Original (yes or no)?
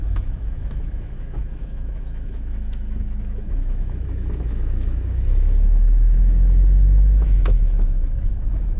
no